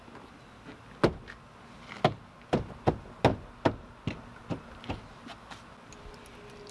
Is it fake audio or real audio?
real